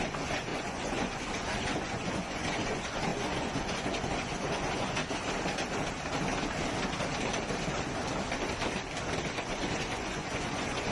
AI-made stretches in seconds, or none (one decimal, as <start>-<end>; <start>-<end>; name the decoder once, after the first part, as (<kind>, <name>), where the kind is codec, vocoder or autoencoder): 0.0-5.0 (vocoder, Vocos); 9.3-10.9